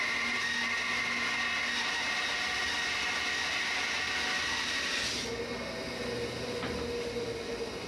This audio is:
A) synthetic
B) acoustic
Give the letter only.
B